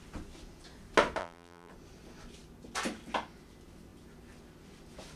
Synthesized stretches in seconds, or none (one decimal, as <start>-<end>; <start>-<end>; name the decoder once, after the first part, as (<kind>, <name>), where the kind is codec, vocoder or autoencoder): 1.2-1.7 (vocoder, BigVGAN v2)

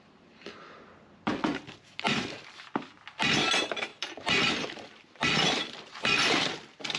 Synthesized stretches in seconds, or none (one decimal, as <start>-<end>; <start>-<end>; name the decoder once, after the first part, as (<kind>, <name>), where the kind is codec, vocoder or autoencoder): 0.0-1.3 (vocoder, BigVGAN v2); 3.5-7.0

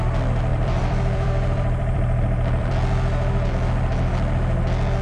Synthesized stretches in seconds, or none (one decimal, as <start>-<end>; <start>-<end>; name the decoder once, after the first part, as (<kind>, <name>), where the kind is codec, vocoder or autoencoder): 0.5-3.5 (vocoder, BigVGAN v2)

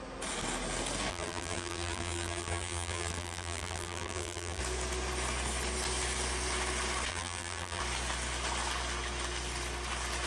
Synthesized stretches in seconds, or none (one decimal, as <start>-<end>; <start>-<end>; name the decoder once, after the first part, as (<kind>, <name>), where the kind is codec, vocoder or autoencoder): 1.1-4.6 (vocoder, BigVGAN v2); 7.1-7.8

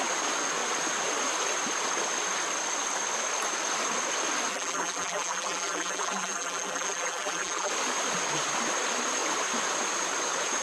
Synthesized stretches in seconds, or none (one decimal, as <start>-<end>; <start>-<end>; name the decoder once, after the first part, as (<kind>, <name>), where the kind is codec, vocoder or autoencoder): 4.5-7.7 (vocoder, BigVGAN v2)

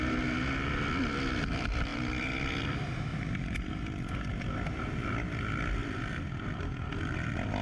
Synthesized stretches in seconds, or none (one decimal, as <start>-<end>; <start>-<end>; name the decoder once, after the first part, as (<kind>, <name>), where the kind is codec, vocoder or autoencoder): 3.1-3.7 (vocoder, BigVGAN v2); 5.8-6.6

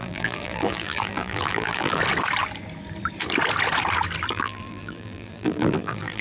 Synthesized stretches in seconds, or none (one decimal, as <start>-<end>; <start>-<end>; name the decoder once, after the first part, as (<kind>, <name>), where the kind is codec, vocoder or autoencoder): 0.0-2.0 (vocoder, BigVGAN v2); 4.3-6.2

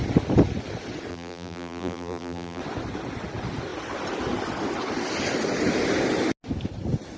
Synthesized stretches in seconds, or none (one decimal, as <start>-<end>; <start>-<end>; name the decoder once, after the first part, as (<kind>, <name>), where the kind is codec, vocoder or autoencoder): 1.1-2.6 (vocoder, BigVGAN v2)